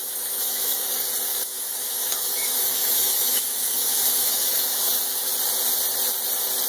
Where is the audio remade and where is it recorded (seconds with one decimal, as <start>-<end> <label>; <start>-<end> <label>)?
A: 0.0-0.9 remade; 0.9-1.3 recorded; 1.3-5.3 remade; 5.3-6.7 recorded